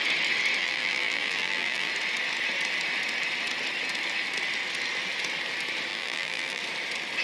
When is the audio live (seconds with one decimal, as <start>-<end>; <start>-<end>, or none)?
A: 0.0-0.6; 1.9-5.9; 6.6-7.2